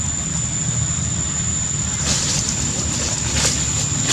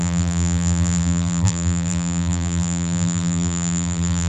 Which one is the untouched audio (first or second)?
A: first